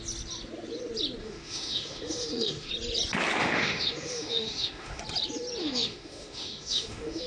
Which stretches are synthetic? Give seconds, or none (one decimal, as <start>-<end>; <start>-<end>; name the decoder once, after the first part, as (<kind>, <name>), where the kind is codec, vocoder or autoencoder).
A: 1.2-2.7 (autoencoder, DAC-VAE); 3.4-5.0; 5.6-7.3